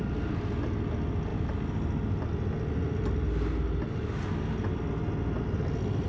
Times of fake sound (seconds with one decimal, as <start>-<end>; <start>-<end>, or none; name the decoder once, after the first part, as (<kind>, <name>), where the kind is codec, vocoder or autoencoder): none